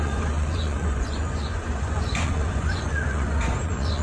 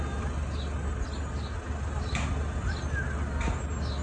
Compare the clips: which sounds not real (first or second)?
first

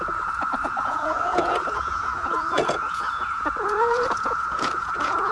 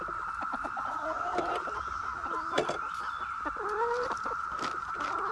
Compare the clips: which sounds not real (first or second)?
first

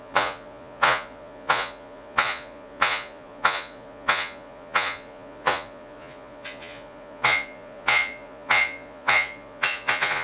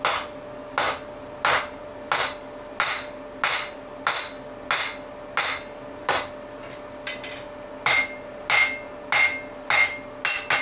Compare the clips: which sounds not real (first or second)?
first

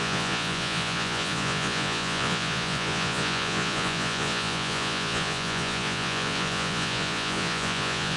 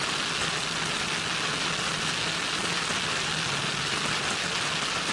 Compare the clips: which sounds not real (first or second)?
first